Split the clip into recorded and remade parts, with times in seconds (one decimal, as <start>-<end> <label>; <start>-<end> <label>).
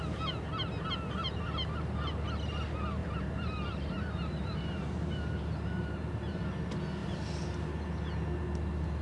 0.0-1.2 recorded; 1.2-2.0 remade; 2.0-3.0 recorded; 3.0-6.4 remade; 6.4-9.0 recorded